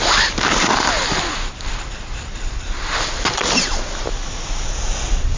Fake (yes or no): no